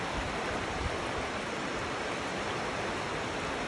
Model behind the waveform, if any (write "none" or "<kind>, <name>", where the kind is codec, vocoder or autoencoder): vocoder, BigVGAN v2